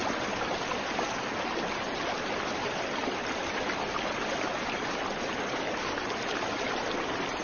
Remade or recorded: recorded